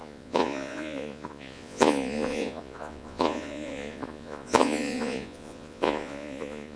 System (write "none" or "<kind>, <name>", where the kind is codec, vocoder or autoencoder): vocoder, Vocos